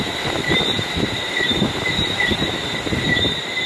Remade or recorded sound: remade